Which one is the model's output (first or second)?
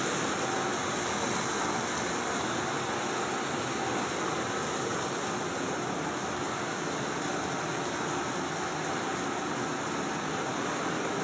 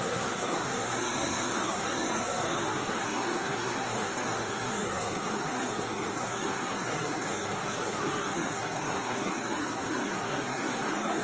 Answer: second